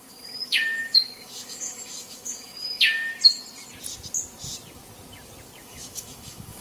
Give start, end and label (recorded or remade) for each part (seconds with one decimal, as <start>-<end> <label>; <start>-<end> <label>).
0.0-3.1 remade; 3.1-5.6 recorded; 5.6-6.6 remade